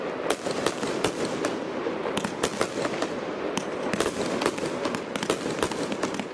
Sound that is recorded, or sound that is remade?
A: recorded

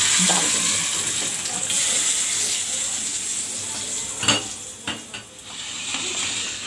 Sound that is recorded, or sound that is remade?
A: recorded